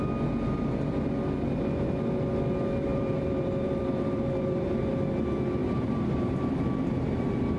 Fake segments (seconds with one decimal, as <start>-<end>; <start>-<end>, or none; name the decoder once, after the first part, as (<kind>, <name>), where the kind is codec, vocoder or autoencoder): 2.9-4.9 (vocoder, BigVGAN v2); 5.6-6.5